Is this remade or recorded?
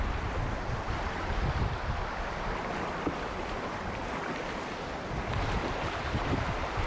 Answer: recorded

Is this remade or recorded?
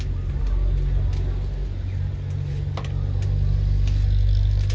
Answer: recorded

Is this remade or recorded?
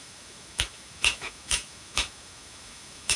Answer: remade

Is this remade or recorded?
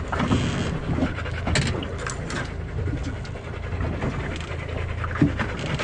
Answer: recorded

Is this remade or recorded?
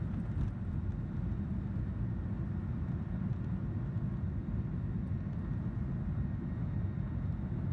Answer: recorded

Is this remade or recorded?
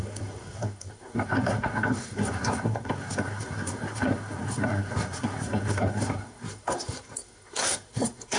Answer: remade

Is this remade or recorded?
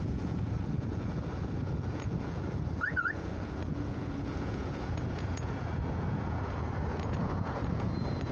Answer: remade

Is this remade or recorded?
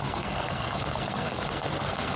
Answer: remade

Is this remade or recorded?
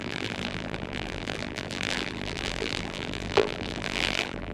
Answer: remade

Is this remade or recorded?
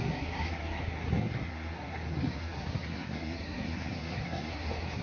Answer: remade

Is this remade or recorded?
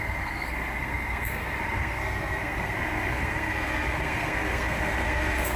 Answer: remade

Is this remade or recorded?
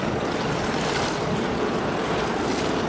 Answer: recorded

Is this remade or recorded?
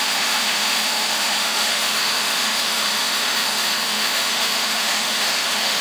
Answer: remade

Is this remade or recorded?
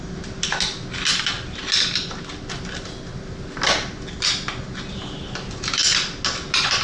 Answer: recorded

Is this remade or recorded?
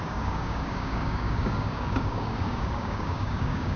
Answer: remade